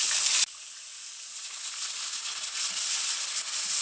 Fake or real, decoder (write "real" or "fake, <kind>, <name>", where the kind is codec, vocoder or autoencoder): real